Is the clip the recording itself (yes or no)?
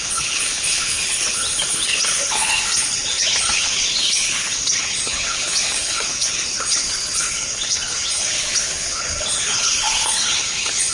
no